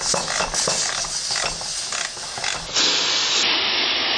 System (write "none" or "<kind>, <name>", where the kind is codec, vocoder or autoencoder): none